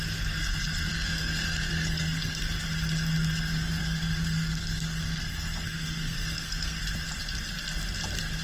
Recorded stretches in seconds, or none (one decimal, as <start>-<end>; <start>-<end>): 0.0-0.9; 2.4-3.8; 6.8-8.4